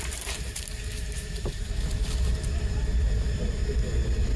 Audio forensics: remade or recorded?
remade